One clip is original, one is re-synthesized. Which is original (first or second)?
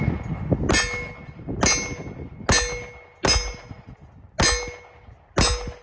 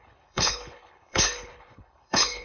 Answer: first